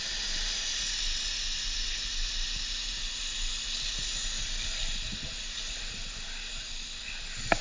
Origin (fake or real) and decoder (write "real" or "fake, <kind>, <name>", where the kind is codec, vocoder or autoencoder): real